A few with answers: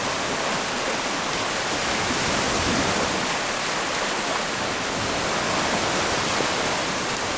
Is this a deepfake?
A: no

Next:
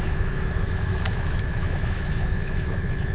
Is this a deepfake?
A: yes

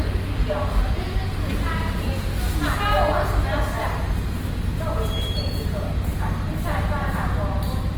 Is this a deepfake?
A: no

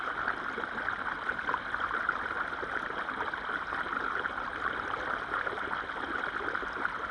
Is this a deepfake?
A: no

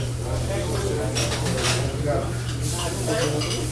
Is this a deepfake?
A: no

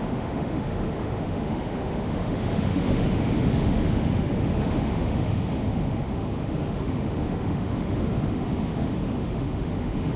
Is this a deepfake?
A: yes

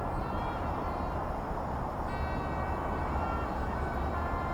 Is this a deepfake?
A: no